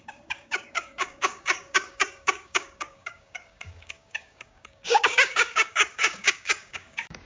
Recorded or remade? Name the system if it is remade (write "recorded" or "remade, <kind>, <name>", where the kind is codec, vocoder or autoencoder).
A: remade, codec, DAC